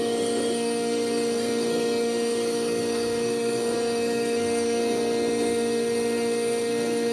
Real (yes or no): no